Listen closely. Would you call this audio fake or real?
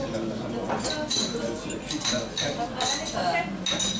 real